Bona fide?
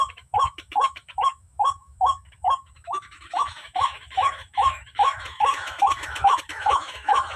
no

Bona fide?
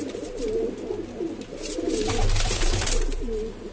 yes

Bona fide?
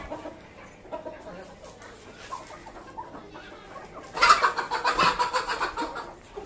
yes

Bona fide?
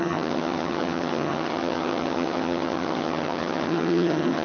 no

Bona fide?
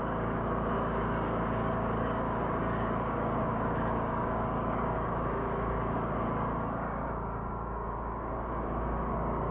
no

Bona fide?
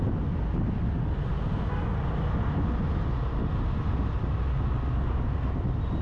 yes